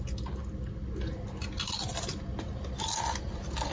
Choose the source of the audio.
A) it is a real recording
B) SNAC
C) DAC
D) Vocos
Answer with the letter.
A